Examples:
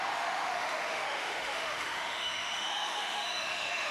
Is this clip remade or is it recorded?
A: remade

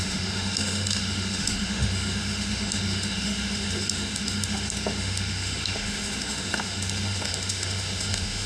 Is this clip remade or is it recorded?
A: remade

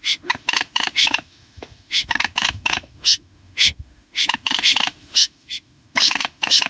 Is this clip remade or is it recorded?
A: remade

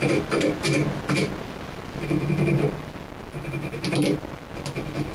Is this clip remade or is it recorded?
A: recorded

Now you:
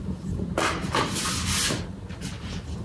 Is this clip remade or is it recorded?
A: recorded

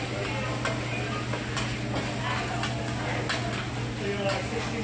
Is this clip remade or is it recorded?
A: recorded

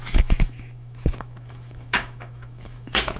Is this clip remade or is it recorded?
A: remade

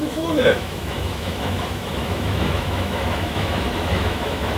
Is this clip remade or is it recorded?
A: remade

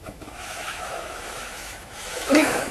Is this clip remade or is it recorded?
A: remade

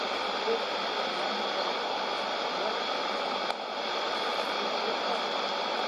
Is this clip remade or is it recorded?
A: recorded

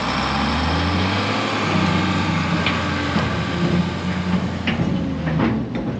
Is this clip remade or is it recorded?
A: recorded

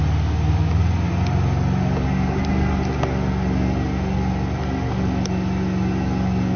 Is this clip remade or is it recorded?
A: recorded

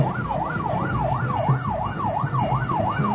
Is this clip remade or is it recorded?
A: recorded